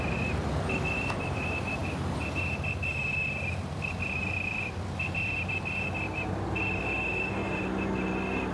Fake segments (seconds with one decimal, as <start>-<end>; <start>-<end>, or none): none